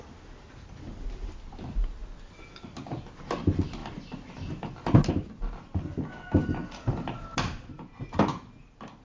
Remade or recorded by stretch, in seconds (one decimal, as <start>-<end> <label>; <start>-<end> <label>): 0.0-9.0 recorded